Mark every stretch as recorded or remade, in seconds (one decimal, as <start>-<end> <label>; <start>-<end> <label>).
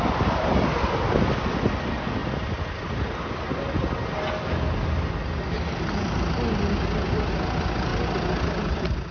0.0-9.1 recorded